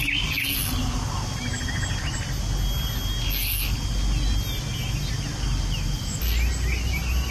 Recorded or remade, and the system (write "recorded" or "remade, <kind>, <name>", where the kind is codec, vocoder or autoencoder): recorded